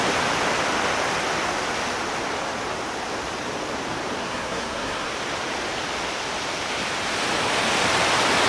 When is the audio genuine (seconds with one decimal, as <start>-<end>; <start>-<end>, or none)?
0.0-4.2; 5.1-8.5